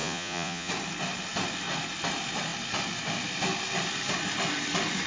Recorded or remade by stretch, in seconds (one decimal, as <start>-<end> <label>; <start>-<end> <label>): 0.0-0.7 remade; 0.7-5.1 recorded